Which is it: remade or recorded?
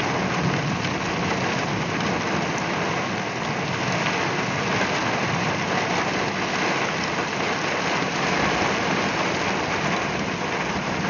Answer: recorded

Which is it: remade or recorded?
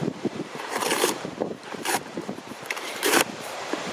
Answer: remade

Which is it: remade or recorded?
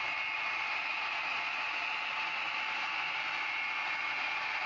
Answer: recorded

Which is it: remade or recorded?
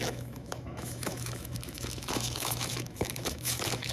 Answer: remade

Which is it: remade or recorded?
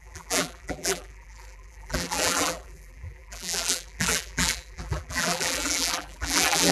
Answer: remade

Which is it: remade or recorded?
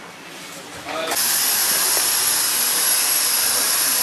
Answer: recorded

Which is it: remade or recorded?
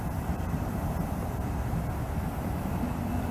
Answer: recorded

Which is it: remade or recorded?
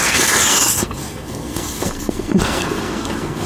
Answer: remade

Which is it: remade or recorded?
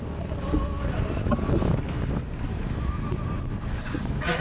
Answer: recorded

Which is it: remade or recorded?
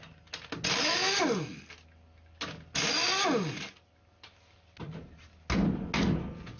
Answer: recorded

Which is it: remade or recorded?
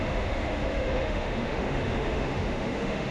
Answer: remade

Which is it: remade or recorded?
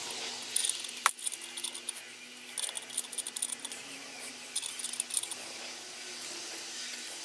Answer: recorded